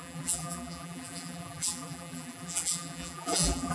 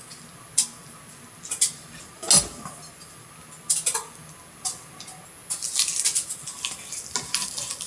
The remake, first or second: first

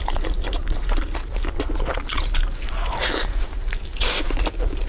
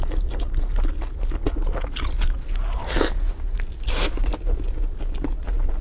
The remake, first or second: first